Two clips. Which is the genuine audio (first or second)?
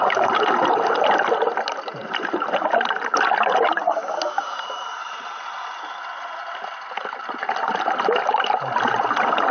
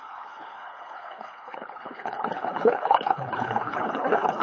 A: first